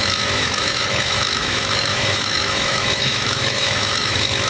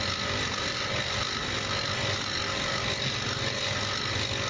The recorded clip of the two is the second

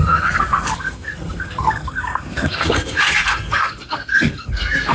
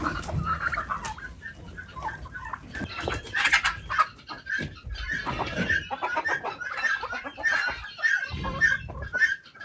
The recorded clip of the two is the second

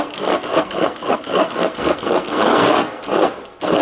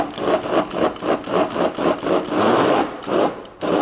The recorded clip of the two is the second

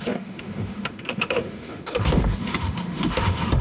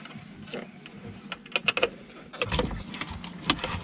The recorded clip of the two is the second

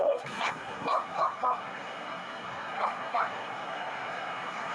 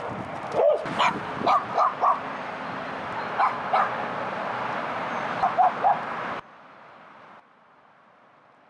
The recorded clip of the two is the second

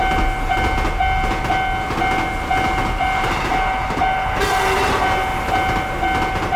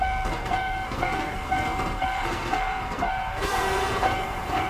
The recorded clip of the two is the first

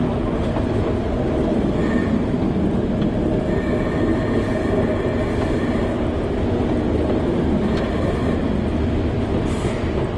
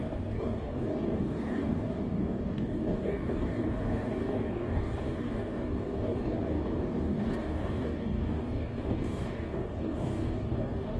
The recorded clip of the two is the first